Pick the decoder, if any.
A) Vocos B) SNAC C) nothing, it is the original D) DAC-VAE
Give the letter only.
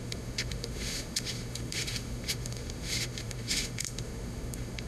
D